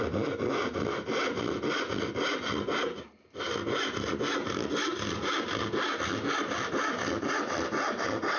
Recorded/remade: recorded